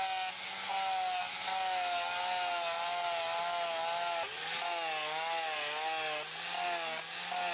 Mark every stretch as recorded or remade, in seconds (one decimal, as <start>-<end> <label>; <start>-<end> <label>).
0.0-7.5 recorded